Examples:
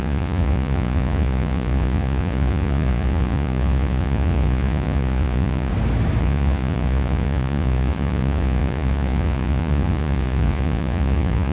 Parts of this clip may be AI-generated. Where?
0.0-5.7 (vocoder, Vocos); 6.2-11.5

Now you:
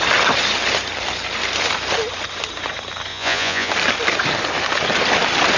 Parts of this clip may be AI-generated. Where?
3.1-3.7 (vocoder, Vocos)

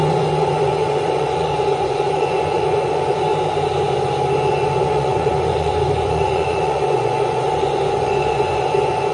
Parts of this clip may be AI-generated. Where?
0.0-3.3 (vocoder, Vocos); 4.5-9.1

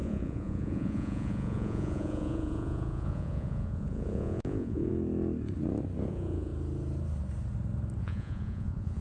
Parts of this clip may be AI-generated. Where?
0.0-4.9 (vocoder, Vocos); 6.1-6.5; 8.0-9.0